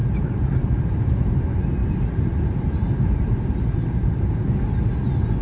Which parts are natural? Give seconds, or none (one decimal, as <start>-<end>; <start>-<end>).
1.3-1.8; 4.6-5.4